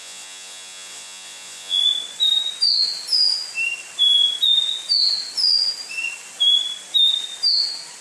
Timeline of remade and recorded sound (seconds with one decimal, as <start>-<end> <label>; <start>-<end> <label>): 0.0-1.8 remade; 1.8-8.0 recorded